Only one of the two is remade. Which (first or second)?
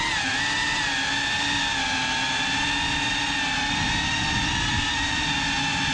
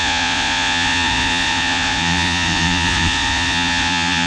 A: second